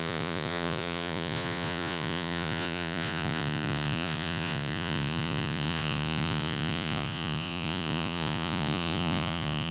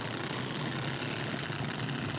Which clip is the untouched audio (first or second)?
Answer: second